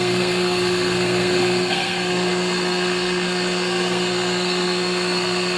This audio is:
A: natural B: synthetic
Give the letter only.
B